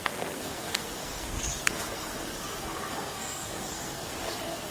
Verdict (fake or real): fake